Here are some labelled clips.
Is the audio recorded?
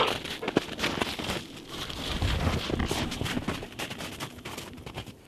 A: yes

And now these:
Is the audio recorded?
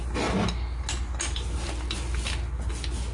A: yes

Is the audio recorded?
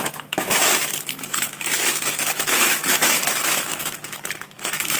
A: no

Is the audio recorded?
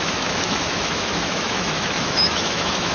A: no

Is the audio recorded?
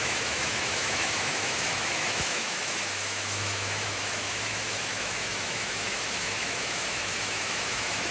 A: no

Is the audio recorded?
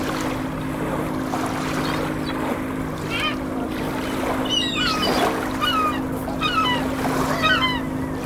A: yes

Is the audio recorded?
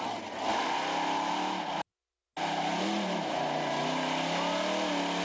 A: yes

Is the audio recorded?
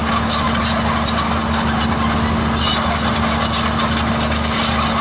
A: yes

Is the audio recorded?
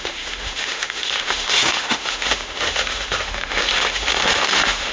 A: no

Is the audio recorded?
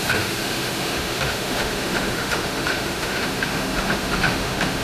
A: no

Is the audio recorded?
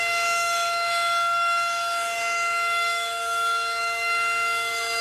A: no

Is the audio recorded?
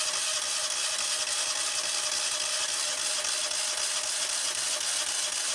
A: yes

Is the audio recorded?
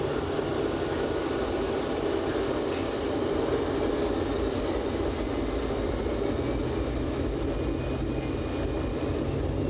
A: yes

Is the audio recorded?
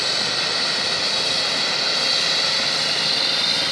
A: yes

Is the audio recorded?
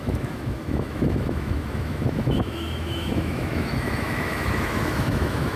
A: no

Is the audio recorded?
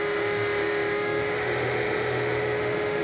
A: no